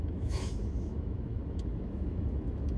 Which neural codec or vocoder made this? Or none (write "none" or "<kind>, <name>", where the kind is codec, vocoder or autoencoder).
autoencoder, DAC-VAE